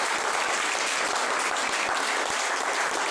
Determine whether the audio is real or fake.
real